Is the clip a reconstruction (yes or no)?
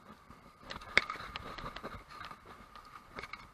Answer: yes